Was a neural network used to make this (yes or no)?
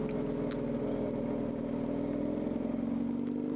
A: no